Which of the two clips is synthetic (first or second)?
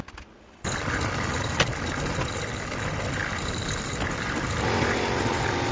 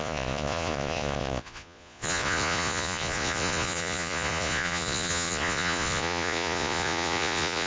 second